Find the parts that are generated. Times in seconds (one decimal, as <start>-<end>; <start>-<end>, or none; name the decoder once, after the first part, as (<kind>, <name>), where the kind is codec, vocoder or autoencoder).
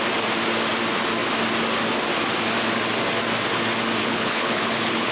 4.0-5.1 (codec, HILCodec)